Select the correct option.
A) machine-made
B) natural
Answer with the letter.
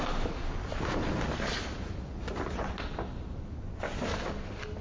B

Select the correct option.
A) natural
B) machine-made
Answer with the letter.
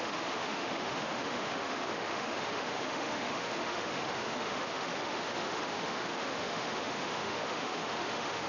B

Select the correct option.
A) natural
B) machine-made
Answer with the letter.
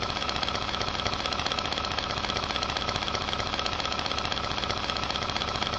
B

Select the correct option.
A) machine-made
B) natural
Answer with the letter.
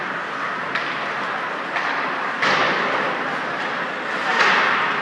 B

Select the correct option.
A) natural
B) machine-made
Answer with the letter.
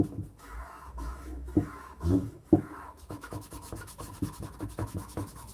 B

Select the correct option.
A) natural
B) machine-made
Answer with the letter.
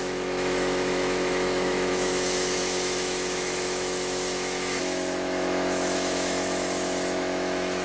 B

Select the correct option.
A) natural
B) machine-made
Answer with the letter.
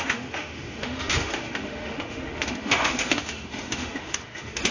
B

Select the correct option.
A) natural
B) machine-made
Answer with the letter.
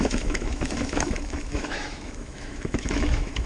B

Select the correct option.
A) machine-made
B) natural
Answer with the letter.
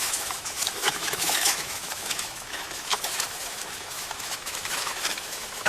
A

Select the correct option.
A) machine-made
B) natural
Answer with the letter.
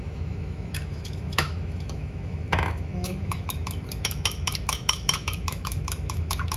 A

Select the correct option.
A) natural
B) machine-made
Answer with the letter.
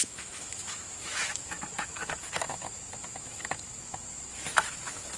B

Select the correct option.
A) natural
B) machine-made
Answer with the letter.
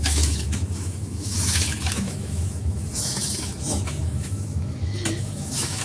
B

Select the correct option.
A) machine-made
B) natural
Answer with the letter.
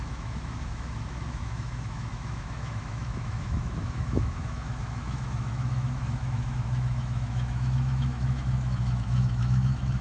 A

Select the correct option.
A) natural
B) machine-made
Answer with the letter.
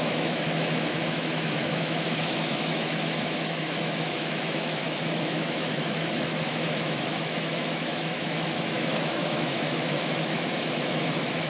B